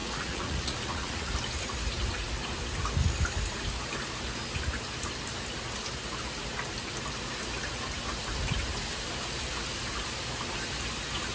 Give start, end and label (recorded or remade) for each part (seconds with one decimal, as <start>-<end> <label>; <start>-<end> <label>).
0.0-1.3 remade; 1.3-11.3 recorded